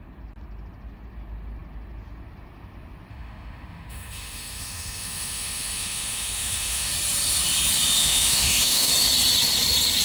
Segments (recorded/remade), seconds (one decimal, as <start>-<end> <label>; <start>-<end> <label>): 0.0-3.1 recorded; 3.1-6.9 remade; 6.9-8.0 recorded; 8.0-8.9 remade; 8.9-10.0 recorded